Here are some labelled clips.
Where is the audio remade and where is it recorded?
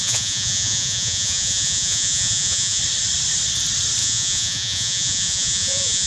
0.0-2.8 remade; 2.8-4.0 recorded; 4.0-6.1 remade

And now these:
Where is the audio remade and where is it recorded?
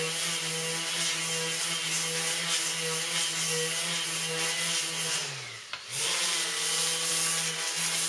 0.0-8.1 recorded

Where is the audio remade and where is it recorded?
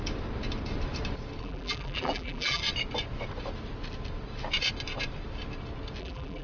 0.0-1.4 recorded; 1.4-2.6 remade; 2.6-6.0 recorded; 6.0-6.4 remade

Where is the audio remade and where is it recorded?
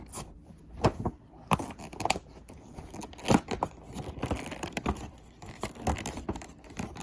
0.0-7.0 recorded